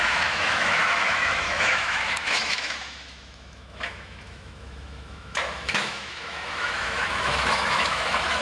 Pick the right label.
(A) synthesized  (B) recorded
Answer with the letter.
A